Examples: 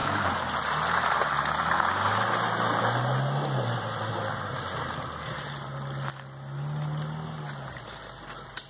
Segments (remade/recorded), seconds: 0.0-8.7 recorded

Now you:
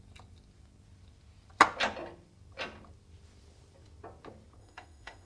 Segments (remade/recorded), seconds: 0.0-4.6 recorded; 4.6-5.3 remade

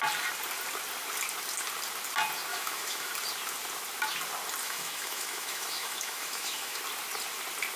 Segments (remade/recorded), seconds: 0.0-2.5 recorded; 2.5-3.1 remade; 3.1-4.6 recorded; 4.6-6.8 remade; 6.8-7.8 recorded

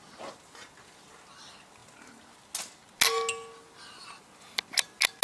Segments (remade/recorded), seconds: 0.0-5.2 recorded

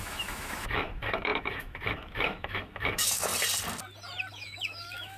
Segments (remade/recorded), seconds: 0.0-3.3 remade; 3.3-4.3 recorded; 4.3-5.2 remade